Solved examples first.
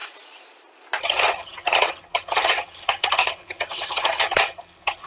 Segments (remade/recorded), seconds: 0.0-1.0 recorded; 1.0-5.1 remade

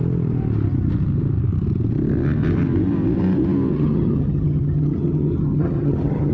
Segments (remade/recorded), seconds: 0.0-3.7 recorded; 3.7-6.3 remade